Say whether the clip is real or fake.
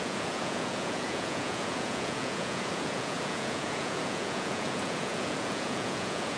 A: fake